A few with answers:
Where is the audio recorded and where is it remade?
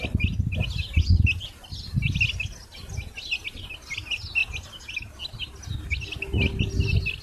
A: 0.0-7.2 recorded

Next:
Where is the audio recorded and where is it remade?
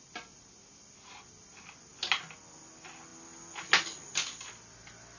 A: 0.0-5.2 recorded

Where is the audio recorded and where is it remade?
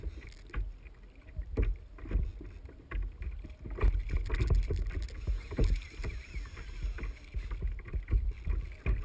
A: 0.0-9.0 recorded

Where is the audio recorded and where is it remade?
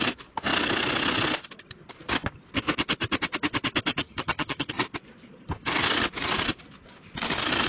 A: 0.0-3.9 recorded; 3.9-4.7 remade; 4.7-7.7 recorded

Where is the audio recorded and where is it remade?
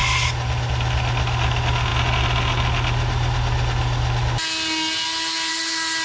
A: 0.0-6.0 recorded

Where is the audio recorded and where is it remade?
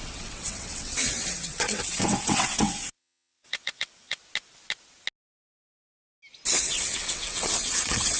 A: 0.0-4.2 remade; 4.2-6.5 recorded; 6.5-8.2 remade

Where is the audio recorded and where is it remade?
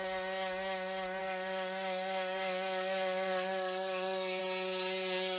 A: 0.0-1.2 recorded; 1.2-4.4 remade; 4.4-5.4 recorded